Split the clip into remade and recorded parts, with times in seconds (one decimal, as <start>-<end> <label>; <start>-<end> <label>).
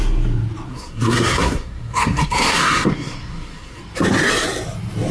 0.0-0.7 recorded; 0.7-3.8 remade; 3.8-5.1 recorded